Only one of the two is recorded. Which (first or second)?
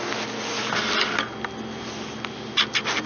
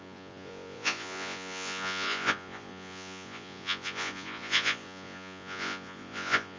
first